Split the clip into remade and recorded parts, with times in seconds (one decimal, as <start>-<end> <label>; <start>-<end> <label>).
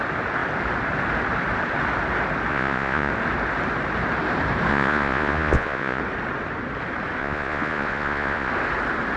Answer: 0.0-2.5 recorded; 2.5-3.1 remade; 3.1-4.7 recorded; 4.7-6.0 remade; 6.0-7.2 recorded; 7.2-8.5 remade; 8.5-9.2 recorded